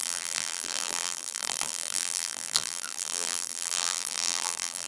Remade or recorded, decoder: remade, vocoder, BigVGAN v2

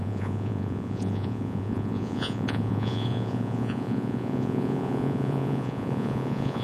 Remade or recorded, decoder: remade, vocoder, Vocos